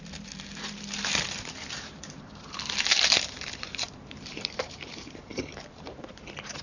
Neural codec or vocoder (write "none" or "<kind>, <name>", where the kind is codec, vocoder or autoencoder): vocoder, BigVGAN v2